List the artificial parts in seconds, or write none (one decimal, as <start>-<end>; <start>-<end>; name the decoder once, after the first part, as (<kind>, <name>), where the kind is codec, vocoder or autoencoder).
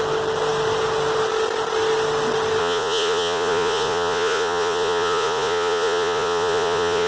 2.6-7.1 (vocoder, Vocos)